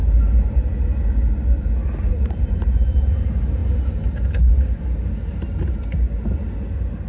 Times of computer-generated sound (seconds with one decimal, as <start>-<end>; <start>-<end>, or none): 2.1-3.6